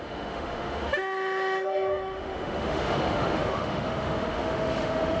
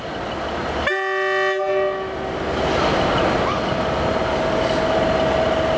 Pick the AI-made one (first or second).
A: first